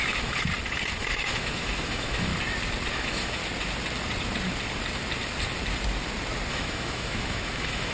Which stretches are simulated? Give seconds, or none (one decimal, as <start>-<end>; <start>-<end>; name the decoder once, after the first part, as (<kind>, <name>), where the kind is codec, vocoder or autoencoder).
0.0-0.5 (autoencoder, DAC-VAE); 1.0-2.3; 2.9-3.4; 6.5-7.9